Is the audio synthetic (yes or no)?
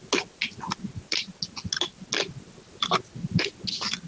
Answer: no